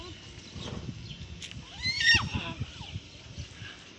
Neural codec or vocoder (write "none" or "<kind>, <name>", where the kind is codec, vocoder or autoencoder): none